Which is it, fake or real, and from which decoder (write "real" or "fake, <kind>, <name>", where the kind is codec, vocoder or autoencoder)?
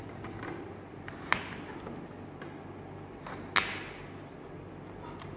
real